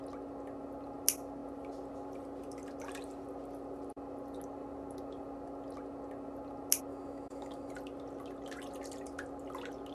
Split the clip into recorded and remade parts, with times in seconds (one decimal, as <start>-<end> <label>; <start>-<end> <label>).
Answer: 0.0-6.9 recorded; 6.9-7.7 remade; 7.7-9.9 recorded